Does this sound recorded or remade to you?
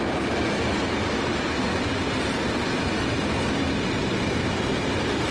recorded